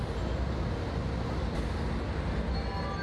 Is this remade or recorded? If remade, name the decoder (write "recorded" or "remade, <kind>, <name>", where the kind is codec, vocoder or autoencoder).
recorded